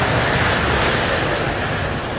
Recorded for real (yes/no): yes